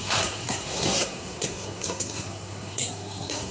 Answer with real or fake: fake